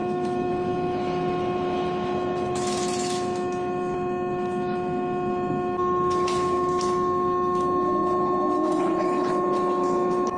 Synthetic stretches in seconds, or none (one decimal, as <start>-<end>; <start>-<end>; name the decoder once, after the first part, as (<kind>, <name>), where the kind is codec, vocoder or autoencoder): 0.0-10.4 (autoencoder, DAC-VAE)